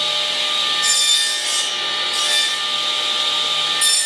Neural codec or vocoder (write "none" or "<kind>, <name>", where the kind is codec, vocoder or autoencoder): none